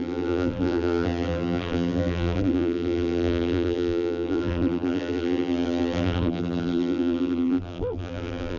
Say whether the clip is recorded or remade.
remade